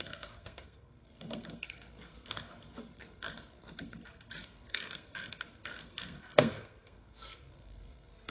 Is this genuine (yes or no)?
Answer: no